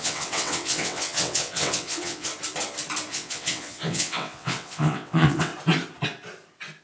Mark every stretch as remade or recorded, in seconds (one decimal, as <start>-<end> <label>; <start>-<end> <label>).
0.0-2.3 remade; 2.3-3.1 recorded; 3.1-5.5 remade; 5.5-6.8 recorded